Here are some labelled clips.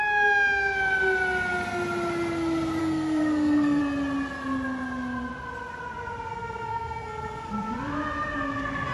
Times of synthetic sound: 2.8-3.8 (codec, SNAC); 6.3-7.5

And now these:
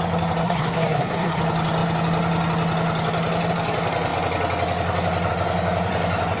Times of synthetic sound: 0.4-1.4 (codec, SNAC)

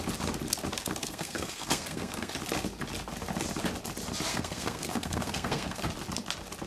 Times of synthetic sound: 1.0-2.3 (codec, SNAC); 4.3-5.8

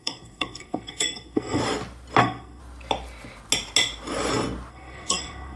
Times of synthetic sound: 0.0-1.6 (codec, SNAC); 2.2-2.6; 4.7-5.6

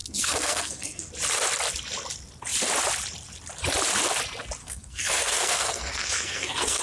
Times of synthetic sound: 0.0-1.1 (codec, SNAC); 4.6-6.8

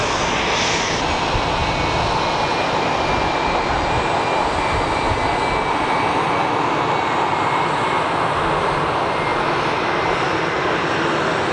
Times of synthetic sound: none

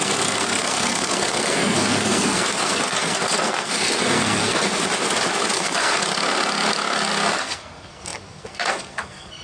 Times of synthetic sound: 0.0-4.7 (codec, SNAC); 5.5-6.1; 7.3-9.4

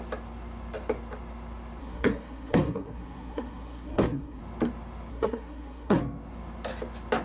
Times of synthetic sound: 1.8-4.4 (codec, SNAC); 5.1-6.0